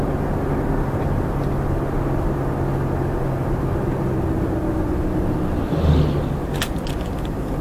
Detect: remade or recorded recorded